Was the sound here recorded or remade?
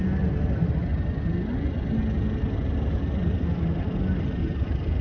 recorded